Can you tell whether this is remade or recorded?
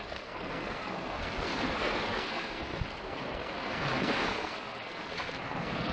remade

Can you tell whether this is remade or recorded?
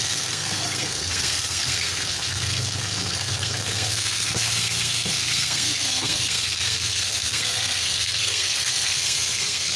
remade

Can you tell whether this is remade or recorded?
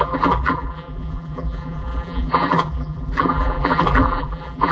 remade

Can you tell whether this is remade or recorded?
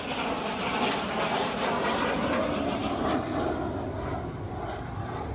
recorded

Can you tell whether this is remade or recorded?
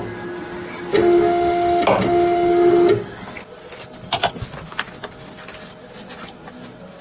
recorded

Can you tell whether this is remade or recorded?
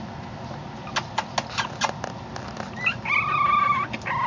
recorded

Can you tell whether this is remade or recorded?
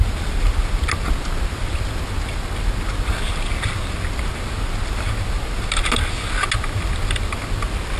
recorded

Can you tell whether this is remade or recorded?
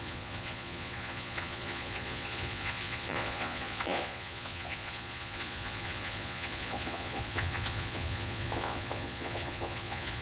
remade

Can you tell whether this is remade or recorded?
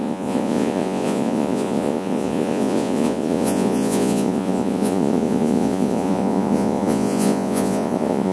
remade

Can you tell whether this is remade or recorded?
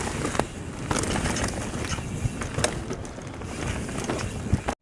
recorded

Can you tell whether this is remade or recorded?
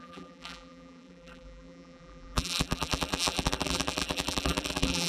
remade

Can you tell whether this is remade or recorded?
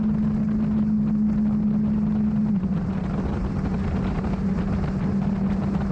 recorded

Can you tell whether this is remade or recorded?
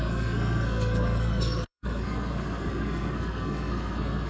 remade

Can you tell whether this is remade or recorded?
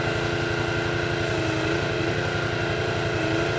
recorded